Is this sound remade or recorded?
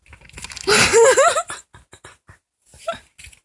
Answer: recorded